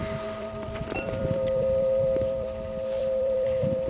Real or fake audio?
fake